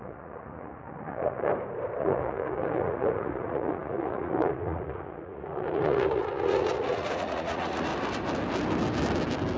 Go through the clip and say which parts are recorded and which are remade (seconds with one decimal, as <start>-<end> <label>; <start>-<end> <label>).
0.0-1.5 remade; 1.5-2.0 recorded; 2.0-7.9 remade; 7.9-9.6 recorded